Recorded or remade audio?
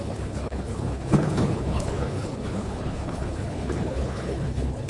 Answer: remade